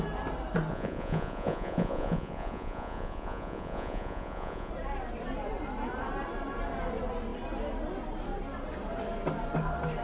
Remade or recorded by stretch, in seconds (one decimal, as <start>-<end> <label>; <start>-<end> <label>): 0.0-0.7 recorded; 0.7-4.7 remade; 4.7-10.0 recorded